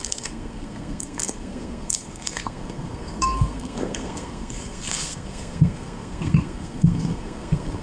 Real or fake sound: fake